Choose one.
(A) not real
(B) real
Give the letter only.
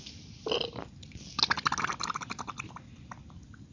B